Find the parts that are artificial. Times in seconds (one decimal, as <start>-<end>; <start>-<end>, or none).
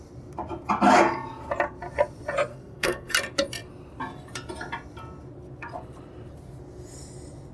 2.5-3.1